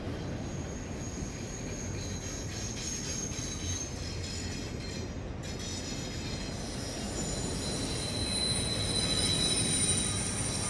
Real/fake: real